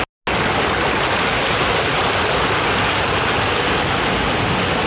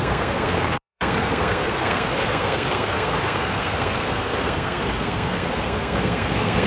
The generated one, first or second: second